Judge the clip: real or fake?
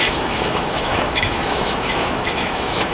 fake